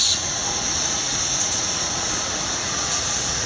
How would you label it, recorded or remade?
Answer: remade